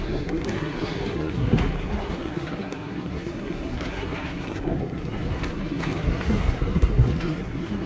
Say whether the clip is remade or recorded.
remade